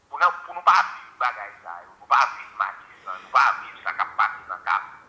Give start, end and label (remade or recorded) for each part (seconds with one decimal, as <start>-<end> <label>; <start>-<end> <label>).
0.0-5.1 recorded